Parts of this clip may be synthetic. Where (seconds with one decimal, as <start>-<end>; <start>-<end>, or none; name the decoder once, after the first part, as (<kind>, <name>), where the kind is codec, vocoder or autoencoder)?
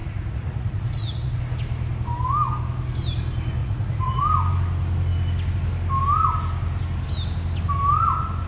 0.0-1.4 (vocoder, Vocos); 3.6-4.2